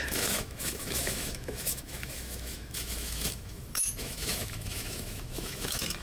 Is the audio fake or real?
fake